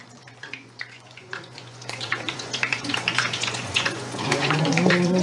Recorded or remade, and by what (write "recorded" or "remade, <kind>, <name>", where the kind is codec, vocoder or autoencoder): remade, vocoder, Vocos